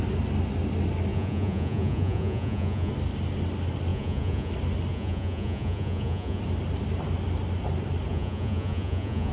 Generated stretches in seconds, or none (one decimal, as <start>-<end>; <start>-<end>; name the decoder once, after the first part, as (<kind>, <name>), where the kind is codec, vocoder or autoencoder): 1.1-2.9 (vocoder, Vocos); 3.9-4.5; 4.9-6.4; 8.1-9.3